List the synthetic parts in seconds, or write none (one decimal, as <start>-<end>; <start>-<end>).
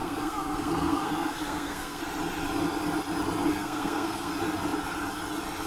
0.0-2.0; 3.5-4.3